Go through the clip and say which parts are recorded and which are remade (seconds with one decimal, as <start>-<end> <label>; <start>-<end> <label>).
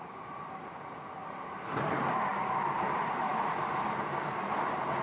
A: 0.0-5.0 recorded